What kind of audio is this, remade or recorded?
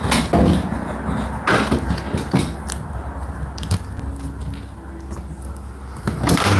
recorded